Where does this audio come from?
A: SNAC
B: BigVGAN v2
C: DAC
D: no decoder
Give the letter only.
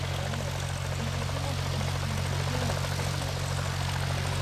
D